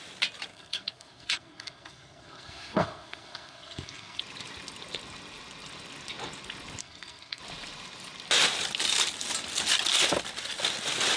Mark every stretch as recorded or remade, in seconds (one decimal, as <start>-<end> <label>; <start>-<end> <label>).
0.0-0.5 recorded; 0.5-4.2 remade; 4.2-6.8 recorded; 6.8-7.4 remade; 7.4-11.2 recorded